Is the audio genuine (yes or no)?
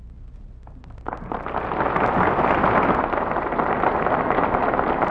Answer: yes